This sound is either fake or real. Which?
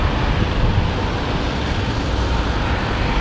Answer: fake